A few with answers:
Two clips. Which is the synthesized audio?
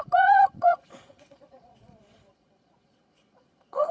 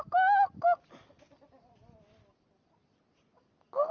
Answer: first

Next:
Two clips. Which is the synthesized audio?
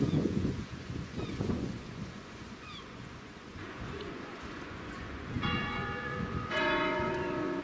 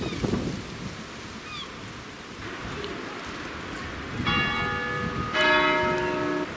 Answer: first